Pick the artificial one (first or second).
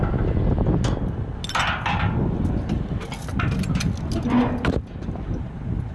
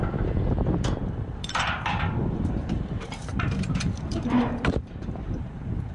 second